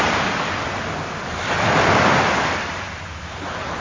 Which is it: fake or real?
fake